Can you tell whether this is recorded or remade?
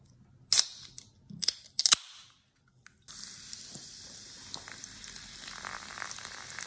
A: recorded